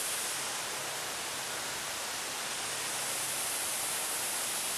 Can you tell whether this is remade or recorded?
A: recorded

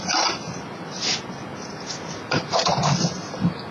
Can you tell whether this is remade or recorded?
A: remade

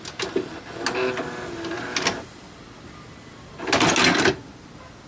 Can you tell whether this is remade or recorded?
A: recorded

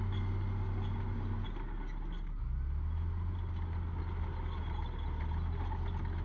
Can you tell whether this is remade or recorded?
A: recorded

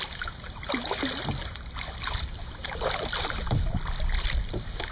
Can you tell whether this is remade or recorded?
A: recorded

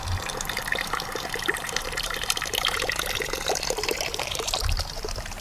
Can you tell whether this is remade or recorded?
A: remade